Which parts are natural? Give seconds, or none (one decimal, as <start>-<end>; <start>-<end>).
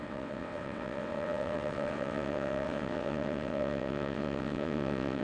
none